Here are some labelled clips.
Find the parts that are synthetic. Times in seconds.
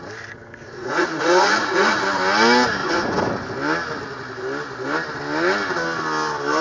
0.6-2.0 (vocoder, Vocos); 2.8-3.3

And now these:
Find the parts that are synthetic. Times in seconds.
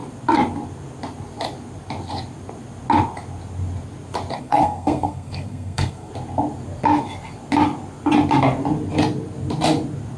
4.4-6.1 (codec, SNAC)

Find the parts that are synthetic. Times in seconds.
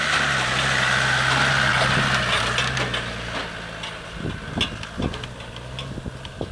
none